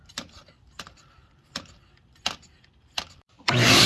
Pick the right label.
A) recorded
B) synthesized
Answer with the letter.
B